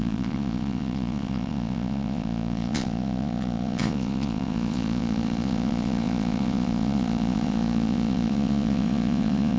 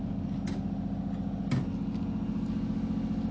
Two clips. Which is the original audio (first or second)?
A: second